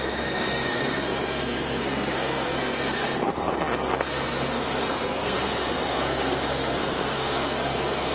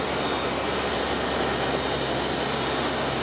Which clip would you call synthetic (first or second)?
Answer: first